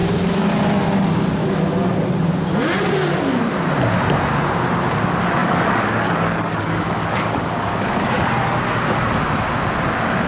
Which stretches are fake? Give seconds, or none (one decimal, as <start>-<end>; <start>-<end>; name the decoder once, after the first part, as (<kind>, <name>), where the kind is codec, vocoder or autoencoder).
5.4-8.3 (codec, DAC)